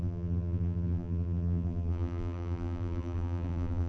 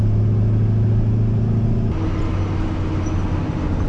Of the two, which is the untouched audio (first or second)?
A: second